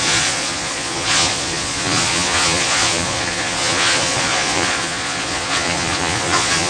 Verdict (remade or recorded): remade